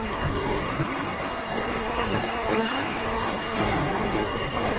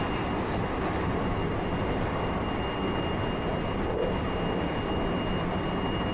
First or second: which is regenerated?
first